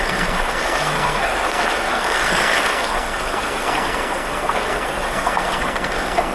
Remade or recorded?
remade